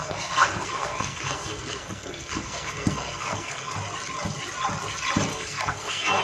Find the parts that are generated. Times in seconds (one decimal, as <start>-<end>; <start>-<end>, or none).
0.0-3.7; 5.3-6.2